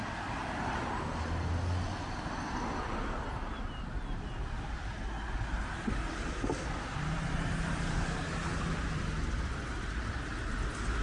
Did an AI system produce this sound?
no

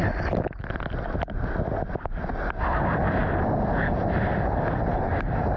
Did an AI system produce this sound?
no